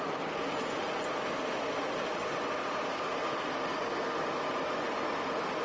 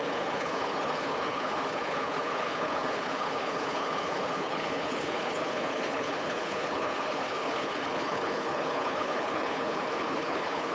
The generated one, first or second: second